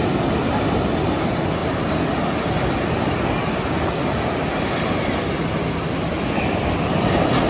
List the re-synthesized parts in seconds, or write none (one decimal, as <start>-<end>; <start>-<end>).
none